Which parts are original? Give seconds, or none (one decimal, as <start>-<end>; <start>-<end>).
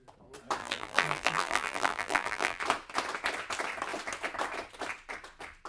0.0-0.6; 2.6-5.7